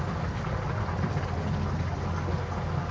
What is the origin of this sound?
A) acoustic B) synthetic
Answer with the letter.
A